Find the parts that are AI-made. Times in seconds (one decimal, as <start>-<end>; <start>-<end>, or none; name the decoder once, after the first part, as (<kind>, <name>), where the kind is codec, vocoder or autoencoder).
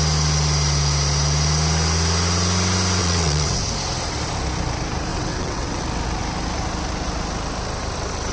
3.0-3.7 (vocoder, WaveNeXt); 5.1-5.8